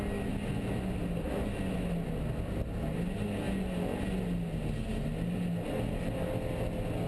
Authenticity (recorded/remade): recorded